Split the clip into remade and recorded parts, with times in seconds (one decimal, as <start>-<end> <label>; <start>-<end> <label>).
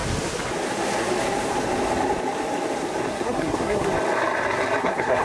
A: 0.0-3.1 recorded; 3.1-3.9 remade; 3.9-4.8 recorded; 4.8-5.2 remade